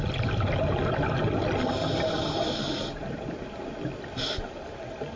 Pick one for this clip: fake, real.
real